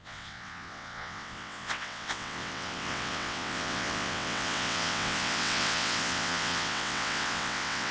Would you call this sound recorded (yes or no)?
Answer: no